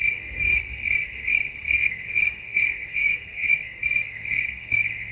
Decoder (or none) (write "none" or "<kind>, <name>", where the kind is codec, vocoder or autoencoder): codec, SNAC